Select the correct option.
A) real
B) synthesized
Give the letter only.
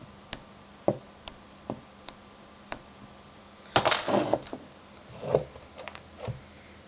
A